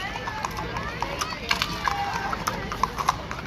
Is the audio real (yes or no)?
yes